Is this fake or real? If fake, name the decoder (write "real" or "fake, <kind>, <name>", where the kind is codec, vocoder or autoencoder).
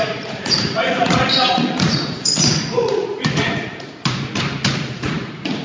fake, vocoder, Vocos